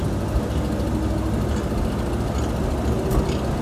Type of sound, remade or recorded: recorded